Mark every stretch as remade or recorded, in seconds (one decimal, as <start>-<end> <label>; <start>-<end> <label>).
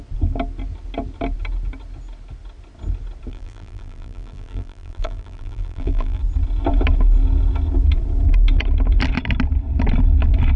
0.0-3.3 recorded; 3.3-6.2 remade; 6.2-10.6 recorded